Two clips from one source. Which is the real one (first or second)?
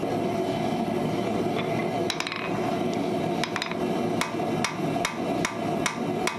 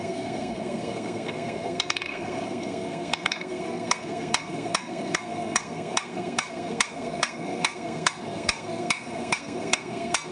first